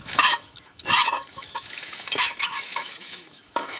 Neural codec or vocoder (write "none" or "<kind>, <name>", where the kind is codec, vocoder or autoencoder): autoencoder, DAC-VAE